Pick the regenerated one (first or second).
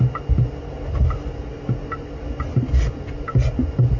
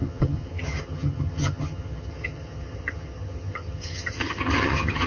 second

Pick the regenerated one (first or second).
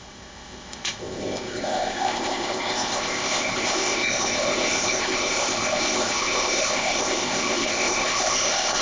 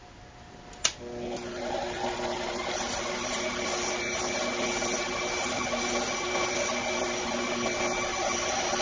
first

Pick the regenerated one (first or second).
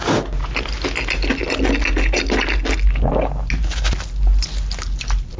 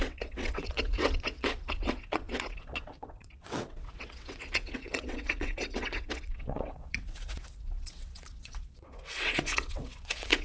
second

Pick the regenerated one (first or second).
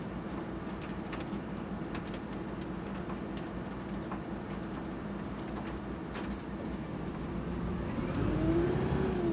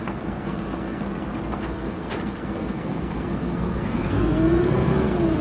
second